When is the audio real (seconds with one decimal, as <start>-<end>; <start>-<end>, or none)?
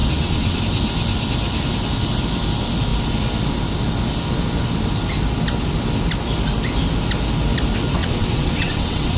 0.6-8.0